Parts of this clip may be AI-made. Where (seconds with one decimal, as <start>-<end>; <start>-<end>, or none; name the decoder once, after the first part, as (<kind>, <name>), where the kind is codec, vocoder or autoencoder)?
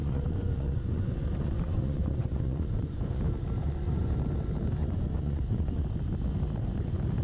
0.0-3.2 (vocoder, Vocos); 3.6-4.1; 4.8-5.8